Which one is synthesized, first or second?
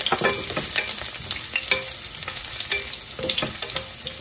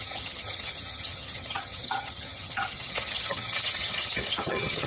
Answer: second